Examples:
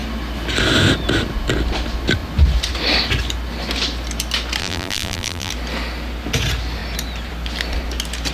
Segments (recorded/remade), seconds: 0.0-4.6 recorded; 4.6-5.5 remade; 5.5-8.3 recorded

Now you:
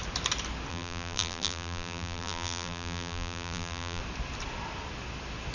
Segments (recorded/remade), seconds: 0.0-0.7 recorded; 0.7-4.0 remade; 4.0-5.5 recorded

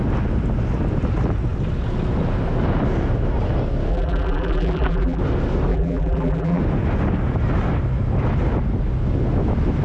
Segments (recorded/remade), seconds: 0.0-3.9 recorded; 3.9-5.2 remade; 5.2-5.7 recorded; 5.7-6.6 remade; 6.6-9.8 recorded

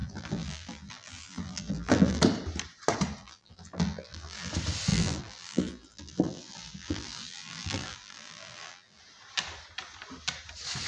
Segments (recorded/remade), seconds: 0.0-2.2 remade; 2.2-3.2 recorded; 3.2-4.5 remade; 4.5-4.9 recorded; 4.9-9.0 remade; 9.0-10.9 recorded

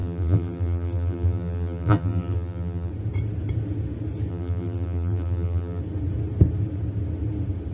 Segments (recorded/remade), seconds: 0.0-2.9 remade; 2.9-4.3 recorded; 4.3-5.8 remade; 5.8-7.7 recorded